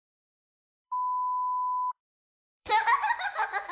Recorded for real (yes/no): no